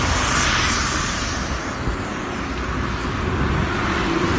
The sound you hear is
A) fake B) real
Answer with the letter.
B